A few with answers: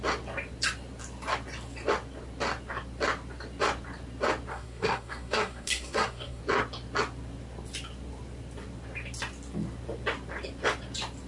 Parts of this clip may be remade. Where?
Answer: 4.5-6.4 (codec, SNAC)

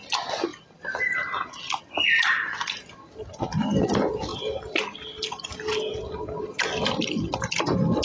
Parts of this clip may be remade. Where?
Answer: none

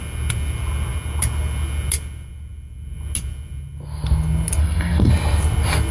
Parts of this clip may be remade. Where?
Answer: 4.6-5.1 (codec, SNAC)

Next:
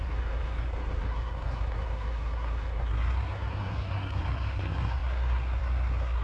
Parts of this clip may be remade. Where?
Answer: 0.0-6.2 (codec, SNAC)

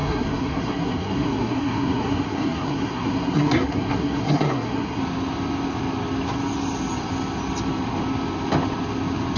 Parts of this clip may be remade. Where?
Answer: 0.0-5.0 (codec, SNAC)

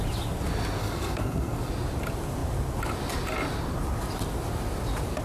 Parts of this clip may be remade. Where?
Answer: 0.8-1.7 (codec, SNAC)

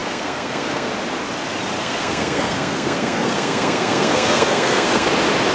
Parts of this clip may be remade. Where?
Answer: 0.0-0.9 (codec, SNAC); 1.8-5.1

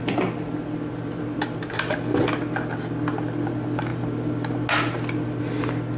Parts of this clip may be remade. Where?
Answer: none